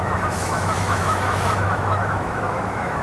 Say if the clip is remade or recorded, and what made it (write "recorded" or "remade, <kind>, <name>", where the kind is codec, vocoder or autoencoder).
remade, autoencoder, DAC-VAE